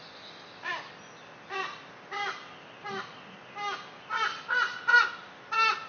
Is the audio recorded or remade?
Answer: recorded